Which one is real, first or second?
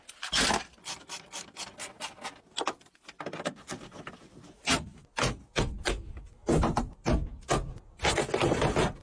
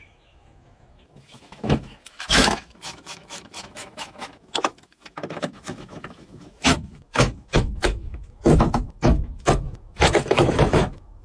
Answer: first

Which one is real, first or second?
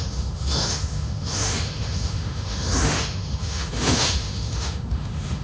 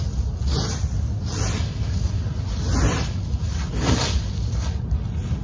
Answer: second